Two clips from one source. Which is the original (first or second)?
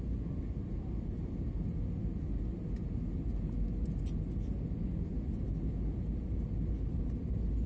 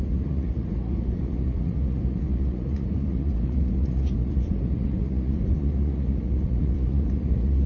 first